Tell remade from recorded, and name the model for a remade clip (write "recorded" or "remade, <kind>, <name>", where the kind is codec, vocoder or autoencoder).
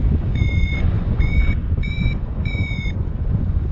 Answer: remade, vocoder, Vocos